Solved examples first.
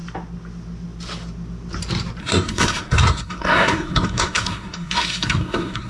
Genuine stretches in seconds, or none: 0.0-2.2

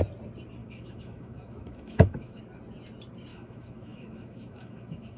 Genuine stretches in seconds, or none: 0.0-0.6; 2.4-3.3

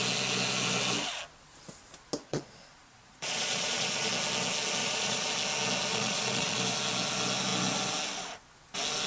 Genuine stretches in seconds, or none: 0.0-2.2; 4.1-4.8; 5.3-5.9; 6.6-9.1

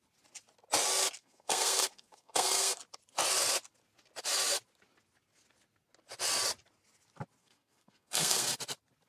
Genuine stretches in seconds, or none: 0.0-1.2; 2.8-7.4; 8.6-9.1

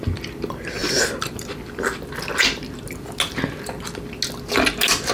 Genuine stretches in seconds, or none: 0.0-5.1

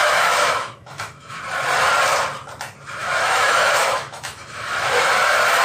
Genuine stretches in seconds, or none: 1.4-3.0; 5.1-5.6

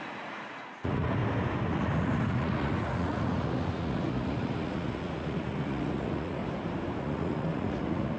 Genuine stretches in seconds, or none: 1.2-1.7; 6.4-7.0

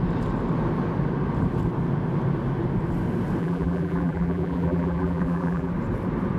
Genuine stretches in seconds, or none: 0.0-3.4; 5.7-6.4